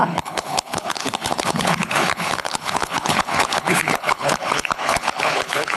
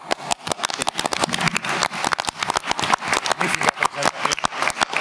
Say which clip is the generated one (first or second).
first